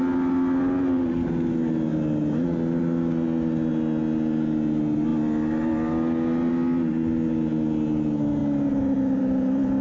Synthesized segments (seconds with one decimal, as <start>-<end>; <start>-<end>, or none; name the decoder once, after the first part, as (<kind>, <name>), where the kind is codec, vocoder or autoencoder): none